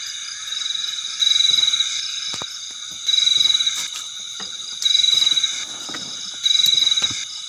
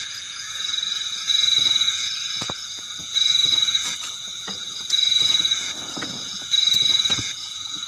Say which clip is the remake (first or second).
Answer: second